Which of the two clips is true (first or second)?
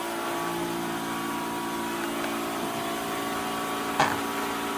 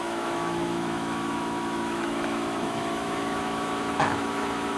first